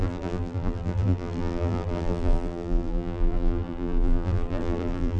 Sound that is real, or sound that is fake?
fake